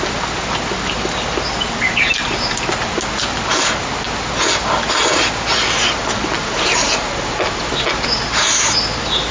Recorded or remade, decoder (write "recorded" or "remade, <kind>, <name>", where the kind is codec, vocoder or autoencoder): recorded